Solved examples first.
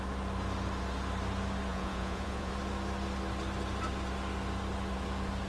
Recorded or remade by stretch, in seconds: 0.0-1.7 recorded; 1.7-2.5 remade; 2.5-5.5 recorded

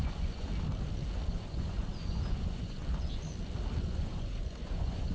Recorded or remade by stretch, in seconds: 0.0-0.5 remade; 0.5-1.3 recorded; 1.3-2.8 remade; 2.8-3.8 recorded; 3.8-5.1 remade

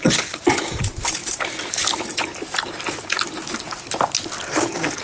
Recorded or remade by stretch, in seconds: 0.0-5.0 recorded

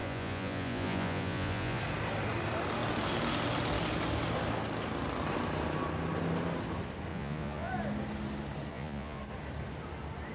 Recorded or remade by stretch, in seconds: 0.0-1.8 remade; 1.8-7.1 recorded; 7.1-7.7 remade; 7.7-8.7 recorded; 8.7-9.2 remade; 9.2-10.3 recorded

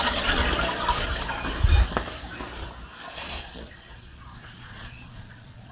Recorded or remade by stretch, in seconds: 0.0-0.4 remade; 0.4-3.2 recorded; 3.2-5.7 remade

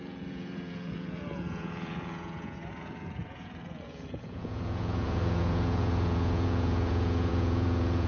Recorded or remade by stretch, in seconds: 0.0-8.1 remade

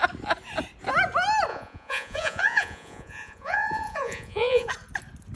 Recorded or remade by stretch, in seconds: 0.0-1.5 recorded; 1.5-4.7 remade; 4.7-5.4 recorded

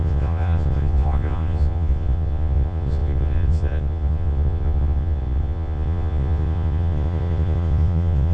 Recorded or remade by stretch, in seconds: 0.0-8.3 remade